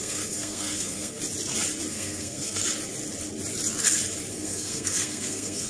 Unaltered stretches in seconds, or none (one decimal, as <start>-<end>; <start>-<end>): 1.2-1.9; 2.6-4.3